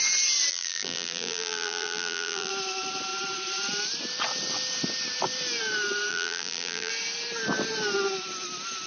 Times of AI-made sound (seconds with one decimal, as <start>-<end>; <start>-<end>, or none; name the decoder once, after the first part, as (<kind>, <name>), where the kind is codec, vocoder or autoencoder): 0.5-2.5 (vocoder, BigVGAN v2); 6.1-6.9